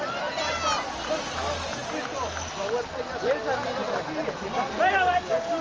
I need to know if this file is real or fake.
real